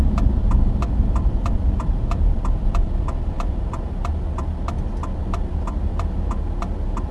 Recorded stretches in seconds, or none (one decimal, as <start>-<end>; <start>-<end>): 0.0-7.1